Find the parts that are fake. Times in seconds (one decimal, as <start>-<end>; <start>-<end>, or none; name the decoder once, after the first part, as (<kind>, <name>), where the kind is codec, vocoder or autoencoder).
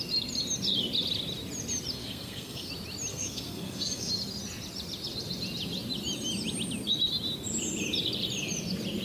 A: 2.0-2.7 (codec, SNAC); 3.1-4.1